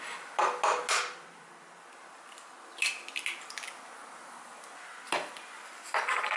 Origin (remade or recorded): recorded